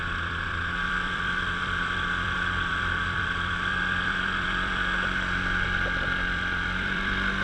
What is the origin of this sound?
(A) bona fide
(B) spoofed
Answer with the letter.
B